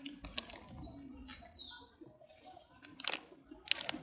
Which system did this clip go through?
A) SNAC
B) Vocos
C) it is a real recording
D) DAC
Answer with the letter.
C